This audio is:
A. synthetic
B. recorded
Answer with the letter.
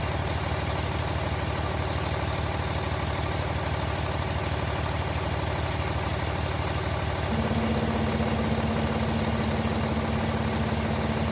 B